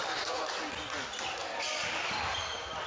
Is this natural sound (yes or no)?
yes